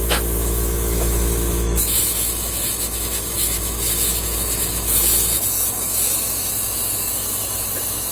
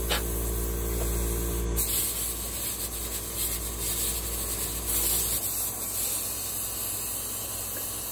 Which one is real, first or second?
second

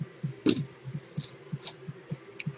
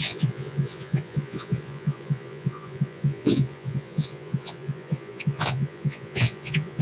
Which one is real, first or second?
first